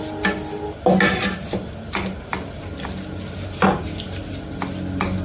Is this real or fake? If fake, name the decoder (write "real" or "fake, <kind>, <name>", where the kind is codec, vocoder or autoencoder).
real